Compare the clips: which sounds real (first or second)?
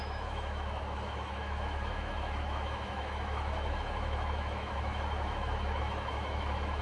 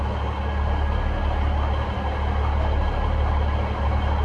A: second